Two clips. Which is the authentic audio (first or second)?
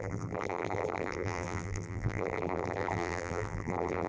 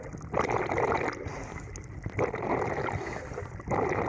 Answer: second